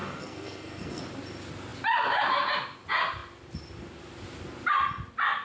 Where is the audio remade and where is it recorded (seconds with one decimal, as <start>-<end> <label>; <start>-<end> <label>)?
0.0-1.0 remade; 1.0-5.4 recorded